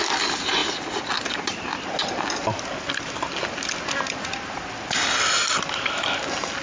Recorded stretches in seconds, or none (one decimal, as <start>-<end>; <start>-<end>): 0.0-6.6